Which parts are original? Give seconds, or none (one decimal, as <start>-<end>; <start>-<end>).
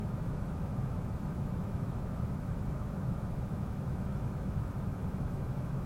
none